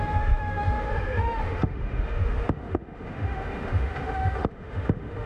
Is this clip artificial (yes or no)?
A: yes